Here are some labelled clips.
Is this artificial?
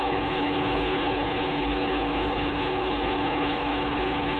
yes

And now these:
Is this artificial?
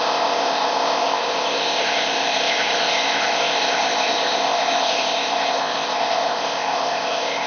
yes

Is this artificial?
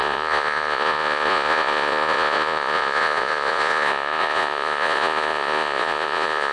yes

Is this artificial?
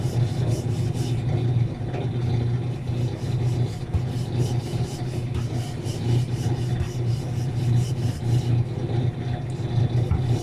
no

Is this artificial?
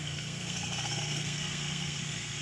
yes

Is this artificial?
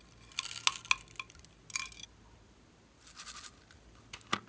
no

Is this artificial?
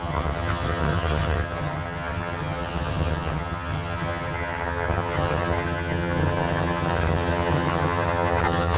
yes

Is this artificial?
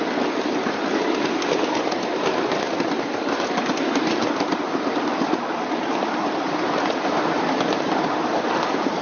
no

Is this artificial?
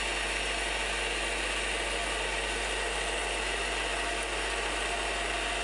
no